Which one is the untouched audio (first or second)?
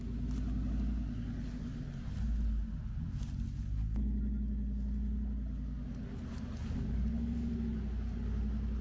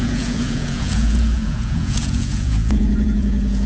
first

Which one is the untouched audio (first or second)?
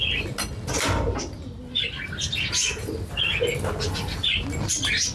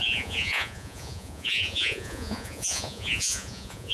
first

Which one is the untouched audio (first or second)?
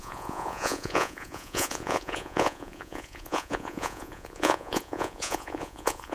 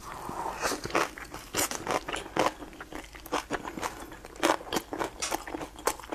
second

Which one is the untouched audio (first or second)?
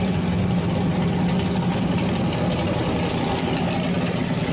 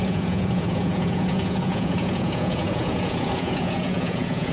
first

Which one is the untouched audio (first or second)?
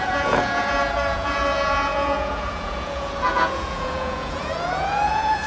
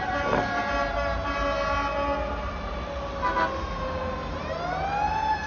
second